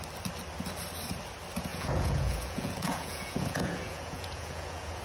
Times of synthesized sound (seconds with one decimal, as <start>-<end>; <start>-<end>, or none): 1.7-5.0